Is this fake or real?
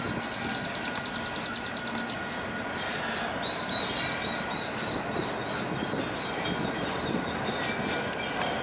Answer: real